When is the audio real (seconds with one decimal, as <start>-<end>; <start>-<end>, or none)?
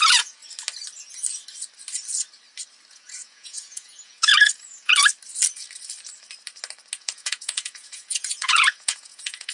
0.4-2.9; 4.9-7.0